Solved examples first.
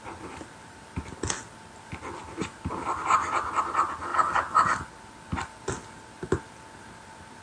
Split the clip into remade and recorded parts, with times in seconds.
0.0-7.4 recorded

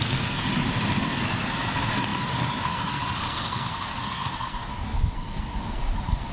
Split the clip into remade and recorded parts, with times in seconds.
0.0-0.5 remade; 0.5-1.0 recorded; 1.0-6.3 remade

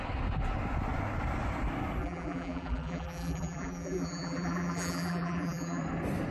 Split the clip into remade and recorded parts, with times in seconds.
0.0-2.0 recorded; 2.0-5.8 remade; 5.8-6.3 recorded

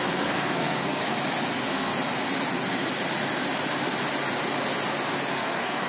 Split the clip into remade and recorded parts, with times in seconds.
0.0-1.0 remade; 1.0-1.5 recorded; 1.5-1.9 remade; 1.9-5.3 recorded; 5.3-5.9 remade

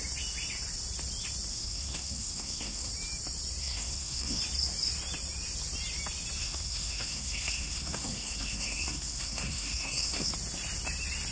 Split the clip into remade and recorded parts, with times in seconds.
0.0-1.5 recorded; 1.5-2.9 remade; 2.9-3.6 recorded; 3.6-4.4 remade; 4.4-6.4 recorded; 6.4-10.3 remade; 10.3-11.3 recorded